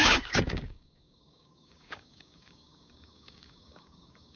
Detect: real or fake fake